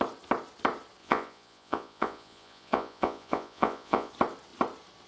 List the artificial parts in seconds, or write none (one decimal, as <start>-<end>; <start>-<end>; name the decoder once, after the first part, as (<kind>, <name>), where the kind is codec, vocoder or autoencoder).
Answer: 1.0-4.1 (vocoder, Vocos)